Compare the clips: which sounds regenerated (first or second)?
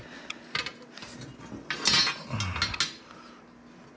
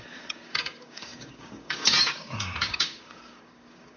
second